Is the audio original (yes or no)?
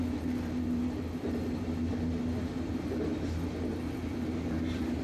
yes